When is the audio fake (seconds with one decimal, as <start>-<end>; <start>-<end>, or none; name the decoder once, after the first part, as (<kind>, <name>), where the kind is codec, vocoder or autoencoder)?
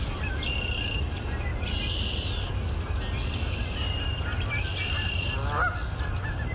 none